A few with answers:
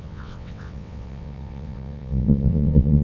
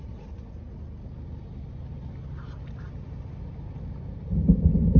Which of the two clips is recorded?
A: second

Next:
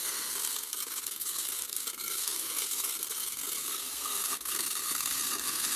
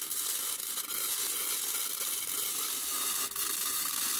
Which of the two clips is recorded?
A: second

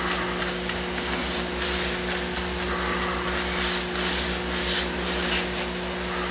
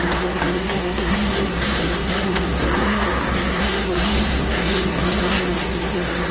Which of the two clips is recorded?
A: first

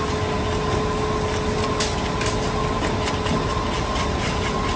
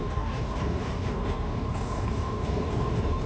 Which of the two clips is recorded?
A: first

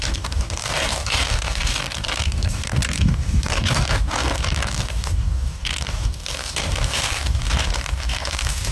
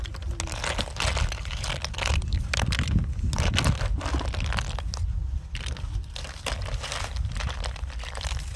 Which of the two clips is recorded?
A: second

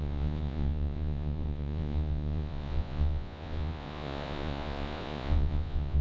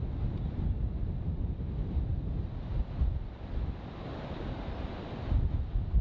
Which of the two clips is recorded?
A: second